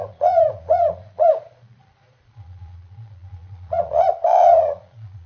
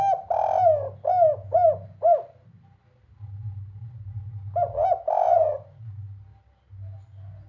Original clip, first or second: second